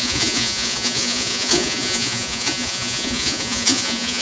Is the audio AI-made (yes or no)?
yes